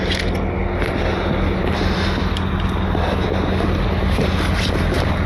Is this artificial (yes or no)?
no